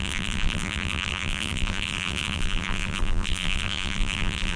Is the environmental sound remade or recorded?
remade